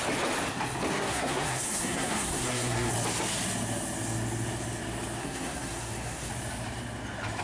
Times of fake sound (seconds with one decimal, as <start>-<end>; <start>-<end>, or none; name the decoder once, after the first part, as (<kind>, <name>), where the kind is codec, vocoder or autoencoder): 0.9-2.9 (codec, SNAC); 5.2-6.3